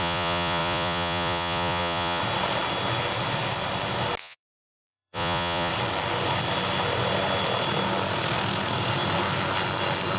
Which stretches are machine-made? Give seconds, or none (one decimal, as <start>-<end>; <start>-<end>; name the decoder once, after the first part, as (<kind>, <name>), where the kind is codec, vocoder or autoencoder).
0.0-2.2 (vocoder, Vocos); 4.2-5.7